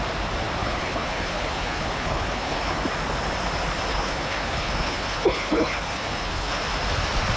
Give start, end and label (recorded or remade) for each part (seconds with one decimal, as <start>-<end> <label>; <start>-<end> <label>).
0.0-0.6 recorded; 0.6-2.8 remade; 2.8-3.9 recorded; 3.9-6.6 remade; 6.6-7.4 recorded